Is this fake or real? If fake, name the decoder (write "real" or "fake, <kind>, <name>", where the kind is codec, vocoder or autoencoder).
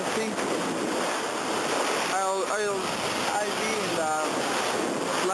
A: real